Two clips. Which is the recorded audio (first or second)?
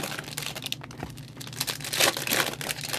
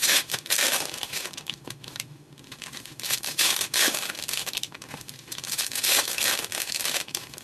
first